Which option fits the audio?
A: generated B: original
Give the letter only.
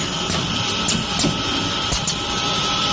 A